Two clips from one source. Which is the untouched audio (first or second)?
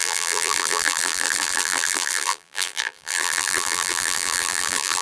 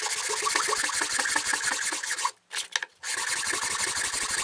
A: second